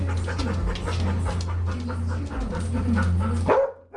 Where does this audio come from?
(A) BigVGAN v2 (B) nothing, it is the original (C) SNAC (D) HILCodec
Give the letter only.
B